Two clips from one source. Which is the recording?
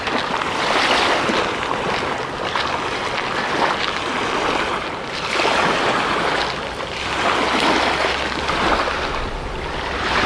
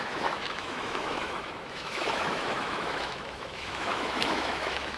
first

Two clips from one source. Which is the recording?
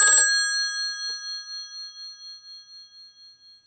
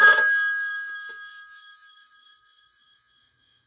first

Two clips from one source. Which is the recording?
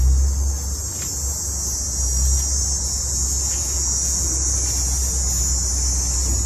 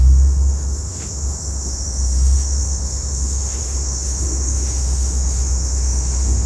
first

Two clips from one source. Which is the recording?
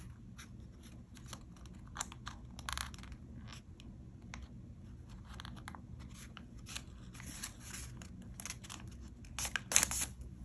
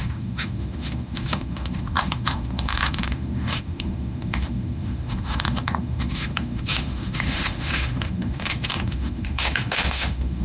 first